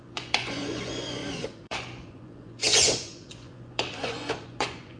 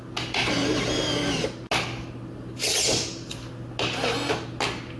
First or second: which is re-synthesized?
first